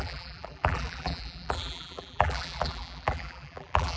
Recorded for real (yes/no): no